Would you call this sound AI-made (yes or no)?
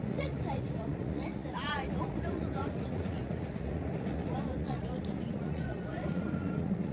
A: yes